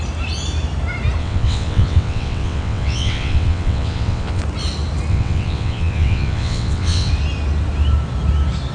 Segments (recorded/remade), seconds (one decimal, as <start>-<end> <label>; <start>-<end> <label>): 0.0-1.2 recorded; 1.2-4.4 remade; 4.4-5.1 recorded; 5.1-7.1 remade; 7.1-8.7 recorded